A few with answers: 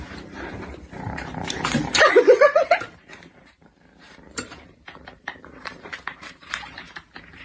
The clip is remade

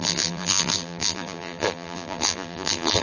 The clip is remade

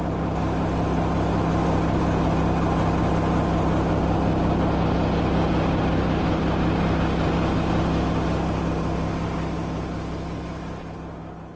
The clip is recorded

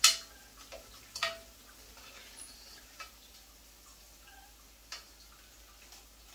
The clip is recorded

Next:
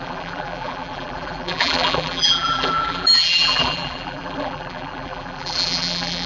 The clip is remade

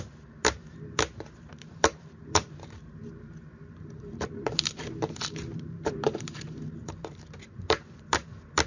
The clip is remade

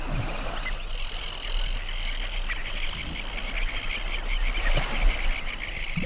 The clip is recorded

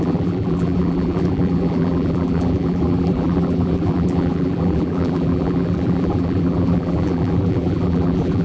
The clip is remade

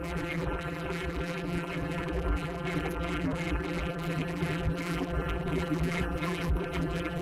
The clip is remade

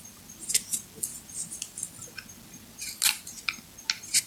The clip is recorded